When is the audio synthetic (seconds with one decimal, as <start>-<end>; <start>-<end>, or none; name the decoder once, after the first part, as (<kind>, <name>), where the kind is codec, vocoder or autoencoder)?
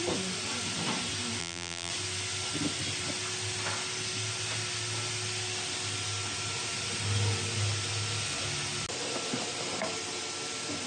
1.4-1.9 (vocoder, BigVGAN v2)